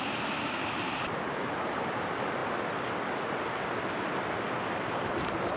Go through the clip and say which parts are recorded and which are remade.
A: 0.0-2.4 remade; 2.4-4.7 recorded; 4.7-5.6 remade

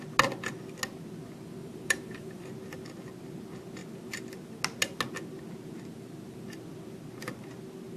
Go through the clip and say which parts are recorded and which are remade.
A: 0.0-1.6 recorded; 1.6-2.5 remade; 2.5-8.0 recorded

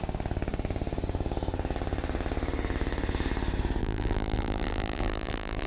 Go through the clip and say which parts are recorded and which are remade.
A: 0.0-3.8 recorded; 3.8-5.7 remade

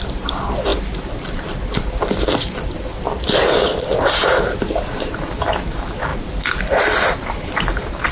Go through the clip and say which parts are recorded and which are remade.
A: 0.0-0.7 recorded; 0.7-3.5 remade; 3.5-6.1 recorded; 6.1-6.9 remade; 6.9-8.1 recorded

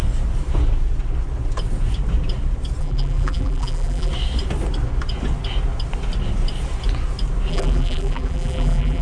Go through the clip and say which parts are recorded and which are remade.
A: 0.0-2.8 recorded; 2.8-4.1 remade; 4.1-7.5 recorded; 7.5-9.0 remade

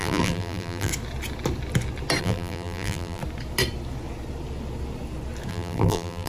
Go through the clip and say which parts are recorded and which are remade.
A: 0.0-0.9 remade; 0.9-2.2 recorded; 2.2-3.2 remade; 3.2-5.5 recorded; 5.5-6.3 remade

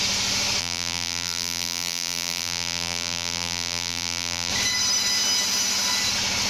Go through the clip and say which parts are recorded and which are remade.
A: 0.0-0.6 recorded; 0.6-4.5 remade; 4.5-6.5 recorded

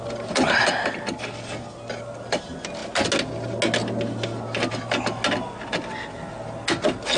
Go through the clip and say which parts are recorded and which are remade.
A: 0.0-7.2 recorded